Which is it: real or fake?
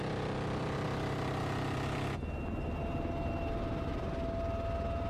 real